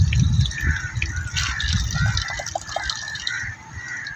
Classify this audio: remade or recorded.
recorded